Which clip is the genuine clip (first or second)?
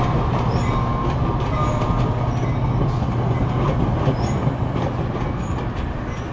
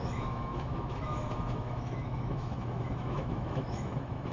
first